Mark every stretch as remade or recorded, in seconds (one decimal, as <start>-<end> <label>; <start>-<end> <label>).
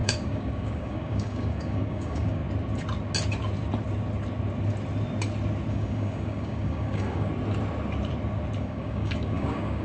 0.0-2.4 remade; 2.4-5.7 recorded; 5.7-7.3 remade; 7.3-8.6 recorded; 8.6-9.8 remade